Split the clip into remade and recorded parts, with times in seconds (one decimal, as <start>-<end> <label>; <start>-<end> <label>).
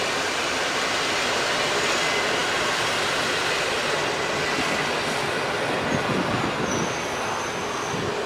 0.0-8.3 recorded